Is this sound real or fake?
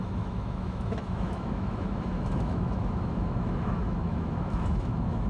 fake